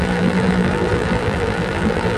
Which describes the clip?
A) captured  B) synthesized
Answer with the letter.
B